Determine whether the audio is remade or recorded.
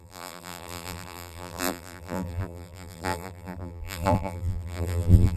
remade